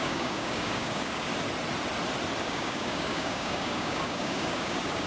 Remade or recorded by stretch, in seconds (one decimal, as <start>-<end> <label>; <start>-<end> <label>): 0.0-1.3 remade; 1.3-2.4 recorded; 2.4-5.1 remade